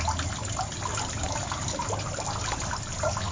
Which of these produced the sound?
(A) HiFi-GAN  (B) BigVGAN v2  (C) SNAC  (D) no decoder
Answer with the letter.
D